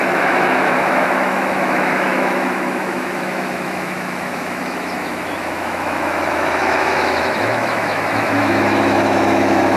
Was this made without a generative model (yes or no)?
no